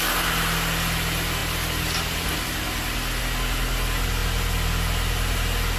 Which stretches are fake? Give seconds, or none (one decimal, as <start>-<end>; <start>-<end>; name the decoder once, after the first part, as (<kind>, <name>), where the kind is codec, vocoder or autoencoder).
none